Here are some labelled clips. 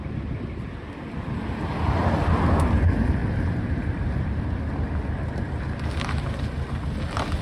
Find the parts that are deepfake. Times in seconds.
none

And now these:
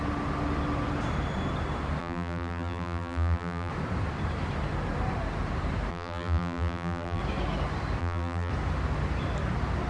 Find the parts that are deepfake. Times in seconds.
2.0-3.7; 5.9-7.2; 8.0-8.5

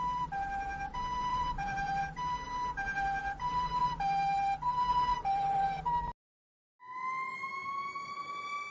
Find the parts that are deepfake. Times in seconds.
1.3-2.0; 3.2-3.8; 5.1-5.8

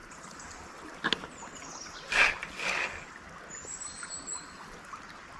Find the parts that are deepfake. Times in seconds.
none

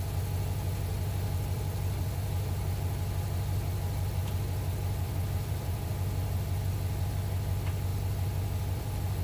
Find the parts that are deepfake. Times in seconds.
0.9-5.9; 7.9-9.2